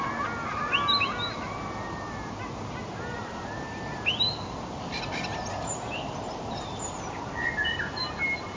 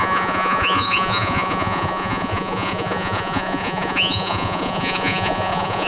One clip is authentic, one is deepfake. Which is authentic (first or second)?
first